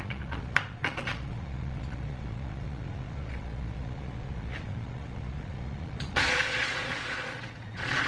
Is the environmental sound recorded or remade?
remade